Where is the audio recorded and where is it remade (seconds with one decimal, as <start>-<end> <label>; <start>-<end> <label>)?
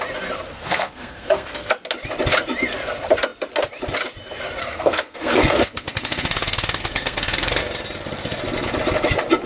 0.0-0.5 recorded; 0.5-1.7 remade; 1.7-4.6 recorded; 4.6-7.6 remade; 7.6-9.5 recorded